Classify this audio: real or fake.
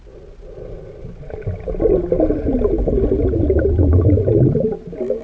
real